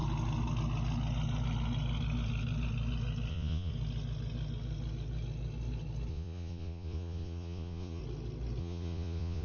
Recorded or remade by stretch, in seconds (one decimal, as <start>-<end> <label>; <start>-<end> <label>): 0.0-3.3 recorded; 3.3-3.7 remade; 3.7-6.1 recorded; 6.1-8.0 remade; 8.0-8.6 recorded; 8.6-9.4 remade